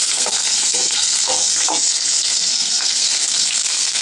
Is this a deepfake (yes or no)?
yes